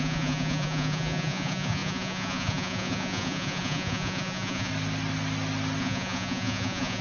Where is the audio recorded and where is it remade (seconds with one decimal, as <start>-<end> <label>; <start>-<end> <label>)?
0.0-4.7 remade; 4.7-5.8 recorded; 5.8-7.0 remade